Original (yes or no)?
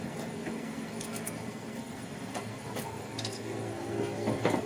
no